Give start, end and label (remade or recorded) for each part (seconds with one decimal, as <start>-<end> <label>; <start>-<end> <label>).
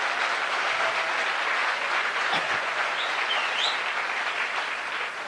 0.0-1.6 recorded; 1.6-3.5 remade; 3.5-5.3 recorded